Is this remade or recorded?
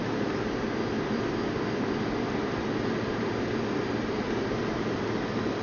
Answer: recorded